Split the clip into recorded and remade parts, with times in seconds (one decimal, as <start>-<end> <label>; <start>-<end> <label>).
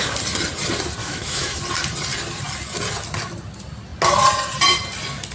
0.0-1.0 recorded; 1.0-1.6 remade; 1.6-5.3 recorded